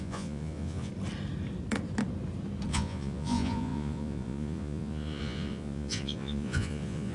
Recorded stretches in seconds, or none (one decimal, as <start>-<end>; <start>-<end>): 0.9-2.7